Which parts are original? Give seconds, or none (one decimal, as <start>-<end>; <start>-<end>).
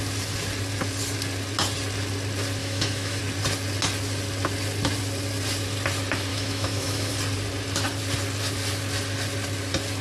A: 0.0-2.6; 3.2-6.3; 7.1-10.0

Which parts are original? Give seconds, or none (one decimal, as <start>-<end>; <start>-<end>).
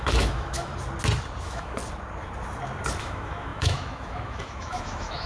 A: 0.7-1.4; 1.8-3.0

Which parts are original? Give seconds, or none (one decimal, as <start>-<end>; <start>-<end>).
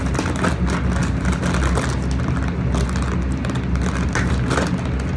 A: 0.0-5.2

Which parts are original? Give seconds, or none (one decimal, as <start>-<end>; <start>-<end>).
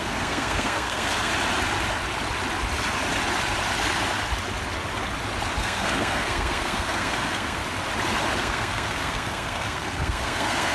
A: 1.3-5.6; 7.6-8.4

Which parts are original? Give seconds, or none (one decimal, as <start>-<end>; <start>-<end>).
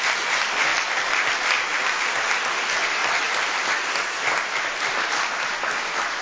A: 0.0-6.2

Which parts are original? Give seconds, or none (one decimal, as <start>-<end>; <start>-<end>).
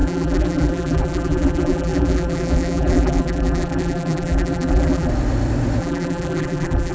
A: 5.1-5.8